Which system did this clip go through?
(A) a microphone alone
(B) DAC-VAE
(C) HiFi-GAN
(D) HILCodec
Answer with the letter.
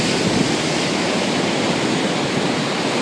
A